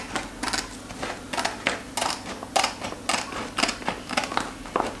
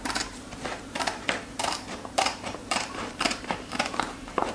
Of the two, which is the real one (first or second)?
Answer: first